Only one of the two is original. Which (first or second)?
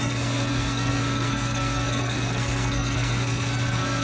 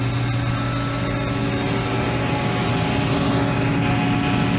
second